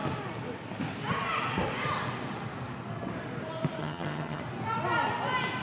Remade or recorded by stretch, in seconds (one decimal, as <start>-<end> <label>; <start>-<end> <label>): 0.0-3.8 recorded; 3.8-4.4 remade; 4.4-5.6 recorded